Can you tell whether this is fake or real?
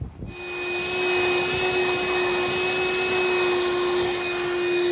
real